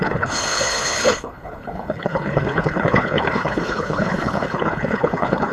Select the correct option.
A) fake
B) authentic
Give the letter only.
A